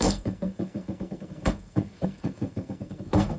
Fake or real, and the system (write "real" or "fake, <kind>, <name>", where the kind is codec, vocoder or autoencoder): fake, codec, SNAC